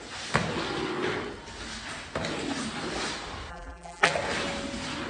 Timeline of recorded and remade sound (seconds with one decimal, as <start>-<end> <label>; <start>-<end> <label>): 0.0-3.5 recorded; 3.5-4.1 remade; 4.1-5.1 recorded